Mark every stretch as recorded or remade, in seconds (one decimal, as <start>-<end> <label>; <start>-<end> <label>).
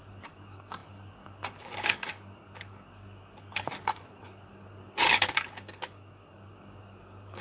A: 0.0-7.4 remade